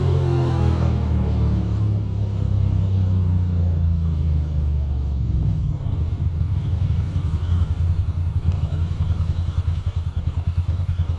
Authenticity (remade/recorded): remade